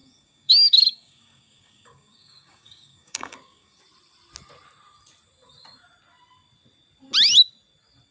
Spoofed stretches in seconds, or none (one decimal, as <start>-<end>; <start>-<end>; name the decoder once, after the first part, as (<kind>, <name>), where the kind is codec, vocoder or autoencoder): 0.0-3.8 (codec, DAC)